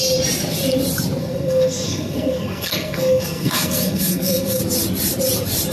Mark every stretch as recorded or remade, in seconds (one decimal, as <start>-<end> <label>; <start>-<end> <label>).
0.0-1.2 recorded; 1.2-4.6 remade; 4.6-5.7 recorded